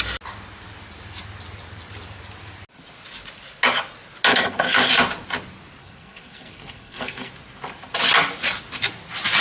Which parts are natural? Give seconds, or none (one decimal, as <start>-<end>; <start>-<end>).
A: 0.0-4.3; 4.9-5.8; 7.3-9.4